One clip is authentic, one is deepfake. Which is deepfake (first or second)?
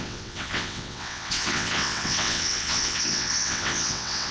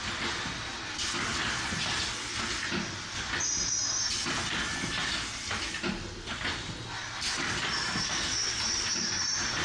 first